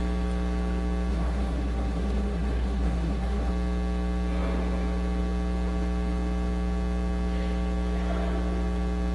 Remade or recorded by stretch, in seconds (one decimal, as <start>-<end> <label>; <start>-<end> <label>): 0.0-1.1 recorded; 1.1-3.5 remade; 3.5-9.1 recorded